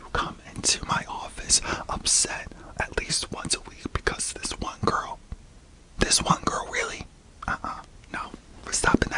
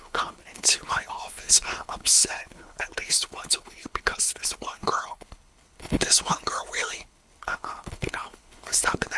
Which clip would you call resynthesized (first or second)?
second